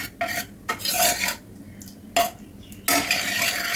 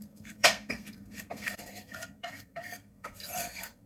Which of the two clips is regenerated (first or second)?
second